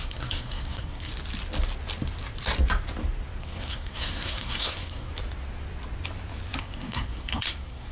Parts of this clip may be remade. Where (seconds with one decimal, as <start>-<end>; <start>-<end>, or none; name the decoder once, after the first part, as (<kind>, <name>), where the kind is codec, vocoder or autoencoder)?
0.0-1.1 (codec, SNAC); 3.4-5.1; 6.6-7.9